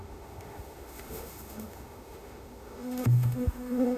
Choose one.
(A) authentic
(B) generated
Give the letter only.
B